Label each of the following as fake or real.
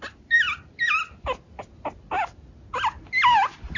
real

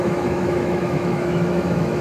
fake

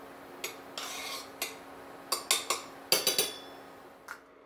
real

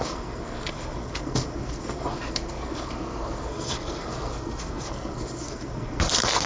fake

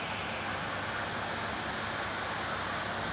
real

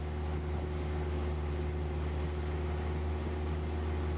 real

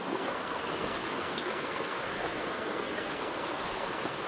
fake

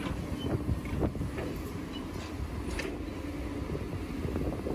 real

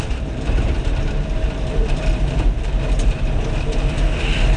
fake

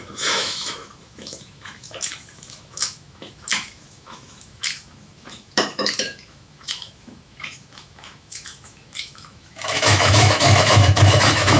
fake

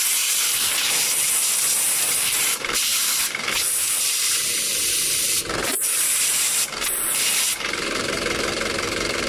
fake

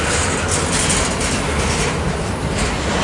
real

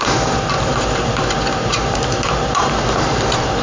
fake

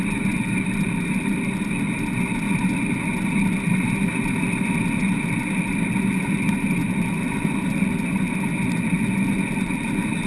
real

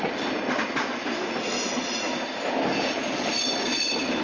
real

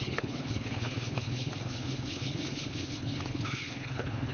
fake